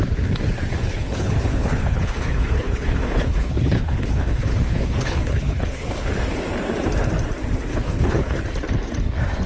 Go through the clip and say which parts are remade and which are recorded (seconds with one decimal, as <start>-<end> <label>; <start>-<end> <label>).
0.0-0.8 recorded; 0.8-6.1 remade; 6.1-7.7 recorded; 7.7-8.4 remade; 8.4-9.5 recorded